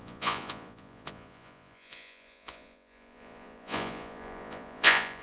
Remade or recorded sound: remade